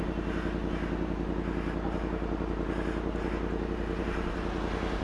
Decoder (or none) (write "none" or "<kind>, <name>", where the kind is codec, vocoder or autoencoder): none